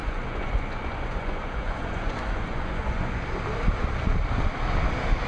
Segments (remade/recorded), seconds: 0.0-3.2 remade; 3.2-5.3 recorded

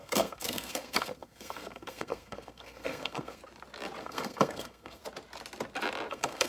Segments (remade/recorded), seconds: 0.0-3.4 remade; 3.4-4.0 recorded; 4.0-5.0 remade; 5.0-6.1 recorded; 6.1-6.5 remade

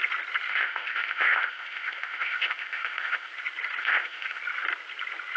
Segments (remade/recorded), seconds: 0.0-0.5 recorded; 0.5-3.3 remade; 3.3-3.8 recorded; 3.8-4.4 remade; 4.4-5.4 recorded

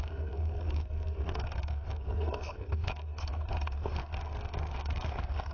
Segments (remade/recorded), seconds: 0.0-5.5 remade

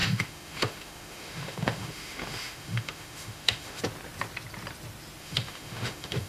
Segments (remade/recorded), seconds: 0.0-3.8 remade; 3.8-5.2 recorded; 5.2-6.3 remade

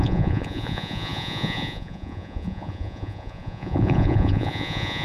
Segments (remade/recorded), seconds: 0.0-5.0 remade

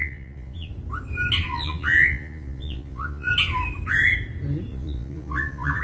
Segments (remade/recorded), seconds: 0.0-0.7 remade; 0.7-1.4 recorded; 1.4-3.3 remade; 3.3-4.7 recorded; 4.7-5.8 remade